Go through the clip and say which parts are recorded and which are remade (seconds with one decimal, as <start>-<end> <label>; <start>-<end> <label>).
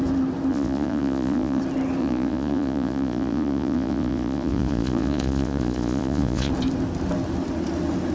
0.0-0.5 recorded; 0.5-1.6 remade; 1.6-2.0 recorded; 2.0-6.5 remade; 6.5-8.1 recorded